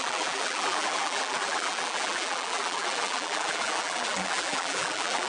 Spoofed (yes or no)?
yes